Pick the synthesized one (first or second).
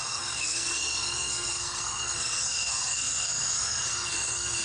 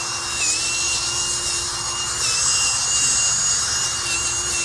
first